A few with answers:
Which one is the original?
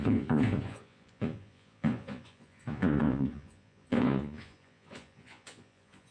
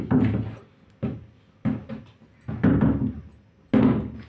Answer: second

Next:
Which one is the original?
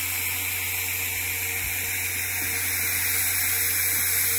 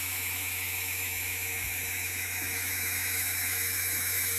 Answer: first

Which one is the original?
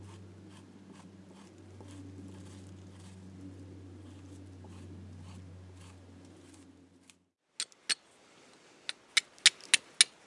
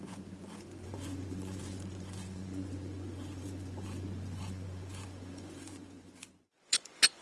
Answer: first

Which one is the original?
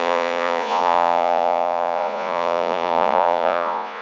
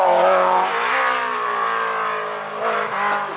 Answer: second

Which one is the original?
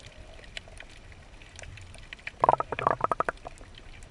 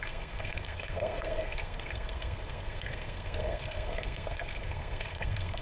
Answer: first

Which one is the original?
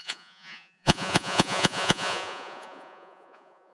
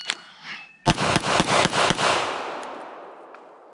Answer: second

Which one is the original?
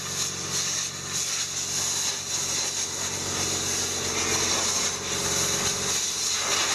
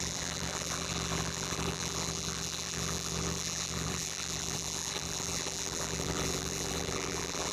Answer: first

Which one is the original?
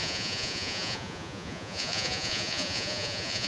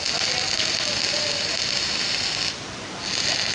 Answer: second